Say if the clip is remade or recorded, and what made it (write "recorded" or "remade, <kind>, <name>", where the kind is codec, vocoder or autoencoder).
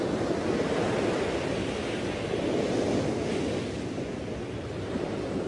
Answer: recorded